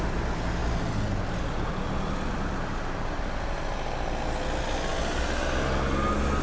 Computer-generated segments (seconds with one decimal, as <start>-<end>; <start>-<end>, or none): none